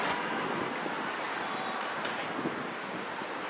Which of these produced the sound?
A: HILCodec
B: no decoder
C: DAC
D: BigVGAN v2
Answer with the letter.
D